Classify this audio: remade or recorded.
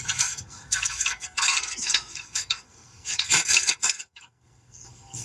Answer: remade